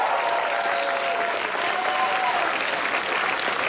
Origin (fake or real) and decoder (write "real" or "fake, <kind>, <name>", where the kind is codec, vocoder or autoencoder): real